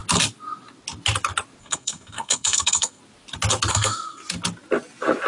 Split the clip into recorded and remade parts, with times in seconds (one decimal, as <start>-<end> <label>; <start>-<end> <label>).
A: 0.0-1.6 recorded; 1.6-3.0 remade; 3.0-3.7 recorded; 3.7-4.2 remade; 4.2-5.3 recorded